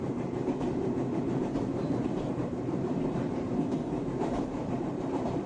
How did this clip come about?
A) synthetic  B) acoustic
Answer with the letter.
A